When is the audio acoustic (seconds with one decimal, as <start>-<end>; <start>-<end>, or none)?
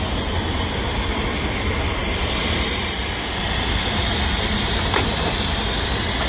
0.0-2.0; 5.3-6.3